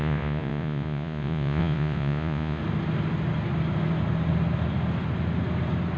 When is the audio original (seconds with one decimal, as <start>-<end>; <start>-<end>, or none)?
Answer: 2.6-6.0